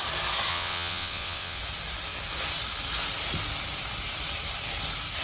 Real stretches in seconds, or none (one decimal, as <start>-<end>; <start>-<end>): 0.0-0.5; 1.6-5.2